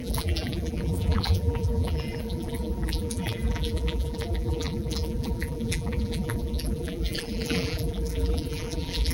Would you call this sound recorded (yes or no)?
no